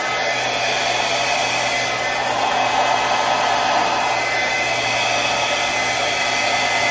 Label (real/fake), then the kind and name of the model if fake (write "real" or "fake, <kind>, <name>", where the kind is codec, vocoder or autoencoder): real